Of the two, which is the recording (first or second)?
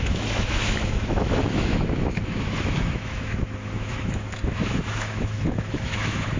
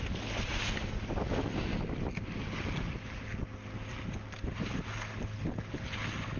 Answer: second